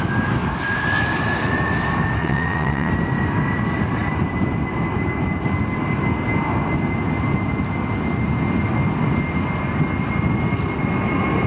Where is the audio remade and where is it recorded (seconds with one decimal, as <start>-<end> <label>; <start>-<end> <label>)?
0.0-2.2 recorded; 2.2-2.9 remade; 2.9-11.5 recorded